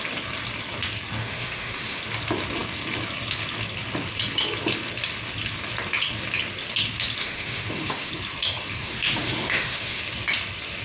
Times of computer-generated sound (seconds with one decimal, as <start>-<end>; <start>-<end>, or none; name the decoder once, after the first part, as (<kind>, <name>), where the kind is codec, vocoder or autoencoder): 1.2-2.0 (autoencoder, DAC-VAE); 7.2-8.1; 8.8-10.0